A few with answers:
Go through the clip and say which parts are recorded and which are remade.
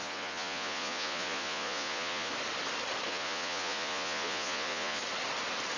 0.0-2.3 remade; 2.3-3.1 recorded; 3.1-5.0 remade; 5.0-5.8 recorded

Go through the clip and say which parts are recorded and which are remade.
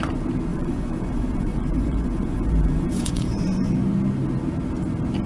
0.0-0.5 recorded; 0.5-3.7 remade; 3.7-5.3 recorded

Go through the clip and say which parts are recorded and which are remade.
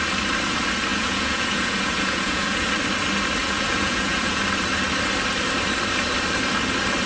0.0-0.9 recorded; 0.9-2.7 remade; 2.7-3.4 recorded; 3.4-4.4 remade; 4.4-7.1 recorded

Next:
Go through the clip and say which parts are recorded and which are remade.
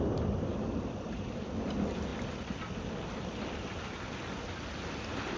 0.0-5.4 recorded